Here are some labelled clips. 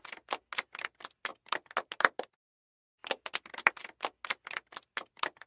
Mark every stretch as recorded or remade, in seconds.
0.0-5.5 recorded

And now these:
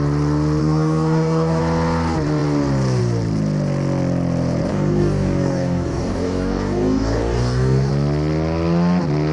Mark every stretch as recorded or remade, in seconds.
0.0-0.6 recorded; 0.6-1.6 remade; 1.6-4.7 recorded; 4.7-7.9 remade; 7.9-9.3 recorded

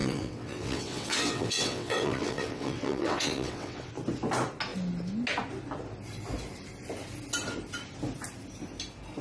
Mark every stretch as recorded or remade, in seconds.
0.0-3.9 remade; 3.9-9.2 recorded

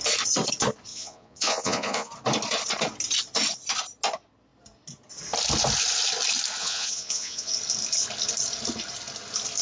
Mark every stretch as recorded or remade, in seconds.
0.0-0.9 recorded; 0.9-2.1 remade; 2.1-6.6 recorded; 6.6-7.5 remade; 7.5-9.6 recorded

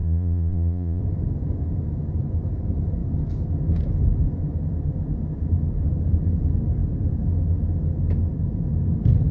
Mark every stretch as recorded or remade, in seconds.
0.0-1.0 remade; 1.0-9.3 recorded

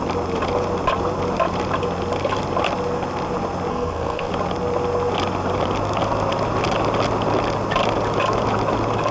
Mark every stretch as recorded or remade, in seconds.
0.0-3.7 recorded; 3.7-4.3 remade; 4.3-9.1 recorded

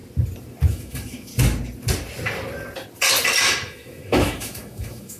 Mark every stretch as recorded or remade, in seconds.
0.0-0.7 recorded; 0.7-1.3 remade; 1.3-3.4 recorded; 3.4-5.2 remade

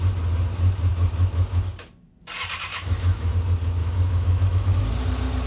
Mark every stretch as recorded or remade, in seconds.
0.0-2.7 recorded; 2.7-3.3 remade; 3.3-3.8 recorded; 3.8-4.8 remade; 4.8-5.5 recorded